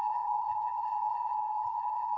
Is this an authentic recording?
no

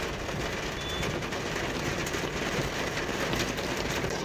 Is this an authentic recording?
yes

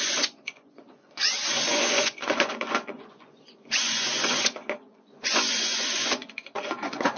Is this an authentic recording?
no